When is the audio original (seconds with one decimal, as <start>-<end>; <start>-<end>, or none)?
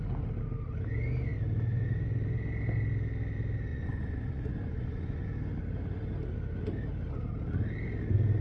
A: 0.0-3.7; 5.2-8.4